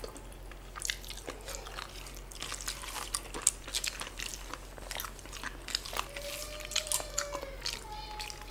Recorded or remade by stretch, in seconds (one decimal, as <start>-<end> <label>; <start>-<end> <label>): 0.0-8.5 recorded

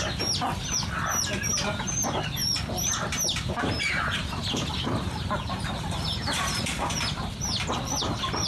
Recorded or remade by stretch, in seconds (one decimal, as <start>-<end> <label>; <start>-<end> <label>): 0.0-2.4 recorded; 2.4-7.3 remade; 7.3-8.5 recorded

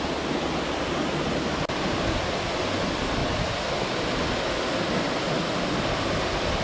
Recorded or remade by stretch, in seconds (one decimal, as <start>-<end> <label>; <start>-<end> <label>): 0.0-3.2 recorded; 3.2-3.8 remade; 3.8-6.6 recorded